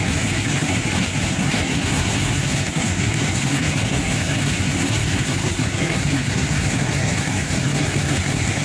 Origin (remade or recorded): remade